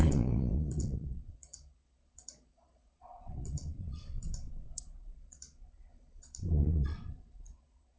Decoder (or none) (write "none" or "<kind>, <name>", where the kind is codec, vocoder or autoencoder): vocoder, Vocos